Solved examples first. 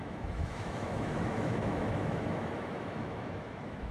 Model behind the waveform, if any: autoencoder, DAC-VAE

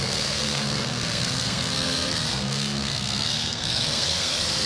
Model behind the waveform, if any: codec, SNAC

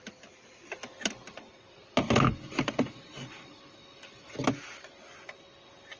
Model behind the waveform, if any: none